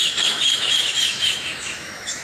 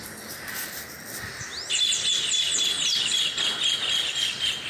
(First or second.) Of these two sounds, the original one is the second